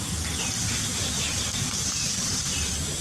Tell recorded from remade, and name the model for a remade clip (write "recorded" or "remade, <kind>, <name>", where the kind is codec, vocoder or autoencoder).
recorded